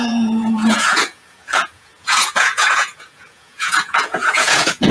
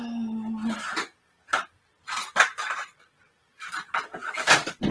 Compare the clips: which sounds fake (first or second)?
first